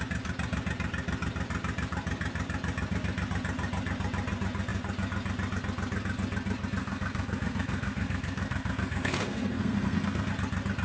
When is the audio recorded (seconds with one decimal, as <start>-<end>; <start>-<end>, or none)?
0.0-6.8; 10.3-10.8

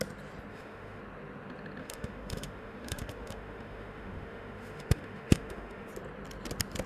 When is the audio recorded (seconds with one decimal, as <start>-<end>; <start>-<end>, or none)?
0.0-0.5; 1.0-1.8; 5.9-6.9

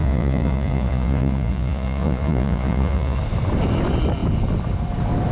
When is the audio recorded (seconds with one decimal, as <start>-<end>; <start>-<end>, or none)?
3.2-5.3

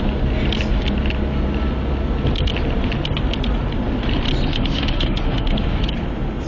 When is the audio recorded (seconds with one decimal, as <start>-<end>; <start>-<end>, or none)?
0.0-4.5; 5.8-6.5

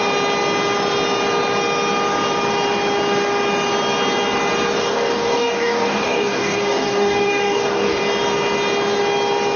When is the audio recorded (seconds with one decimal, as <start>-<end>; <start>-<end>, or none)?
0.0-4.8; 8.0-9.6

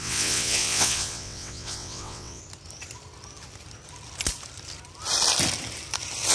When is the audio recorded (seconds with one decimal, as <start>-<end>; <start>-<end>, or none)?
2.4-6.3

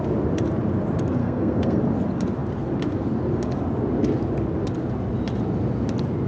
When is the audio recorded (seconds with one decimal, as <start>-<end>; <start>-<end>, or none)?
0.0-1.2; 1.8-6.3

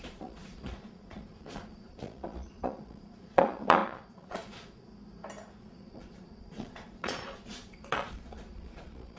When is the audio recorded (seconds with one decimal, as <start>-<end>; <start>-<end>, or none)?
4.9-5.6